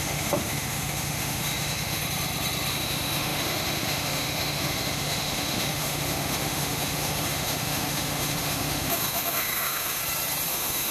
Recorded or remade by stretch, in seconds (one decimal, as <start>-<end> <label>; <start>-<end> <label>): 0.0-2.0 remade; 2.0-2.7 recorded; 2.7-10.0 remade; 10.0-10.5 recorded; 10.5-10.9 remade